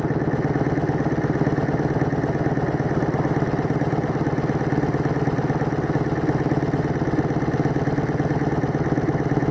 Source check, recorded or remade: recorded